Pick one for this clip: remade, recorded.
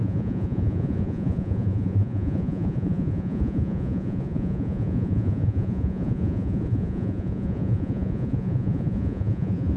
remade